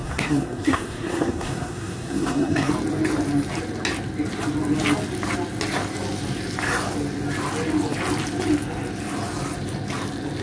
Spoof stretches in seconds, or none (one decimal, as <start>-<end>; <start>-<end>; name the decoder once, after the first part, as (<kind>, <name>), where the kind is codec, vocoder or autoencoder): 0.0-2.7 (codec, SNAC)